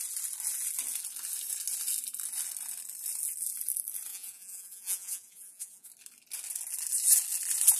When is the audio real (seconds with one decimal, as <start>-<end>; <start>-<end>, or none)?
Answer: 0.0-4.1; 5.9-7.8